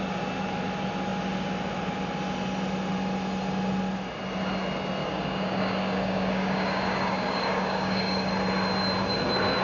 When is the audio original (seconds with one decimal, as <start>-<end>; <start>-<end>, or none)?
0.0-5.0; 8.3-9.6